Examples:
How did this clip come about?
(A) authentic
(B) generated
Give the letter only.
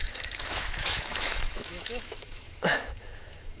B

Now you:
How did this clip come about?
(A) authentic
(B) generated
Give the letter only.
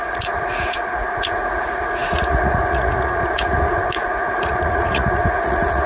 B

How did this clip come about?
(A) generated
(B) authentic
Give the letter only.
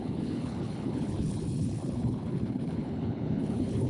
A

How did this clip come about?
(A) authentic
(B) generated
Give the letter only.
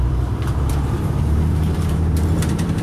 B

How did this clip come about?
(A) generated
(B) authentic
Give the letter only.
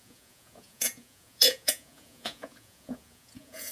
A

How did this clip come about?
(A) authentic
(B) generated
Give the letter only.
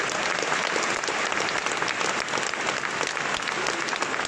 A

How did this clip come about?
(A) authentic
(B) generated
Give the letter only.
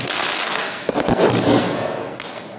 B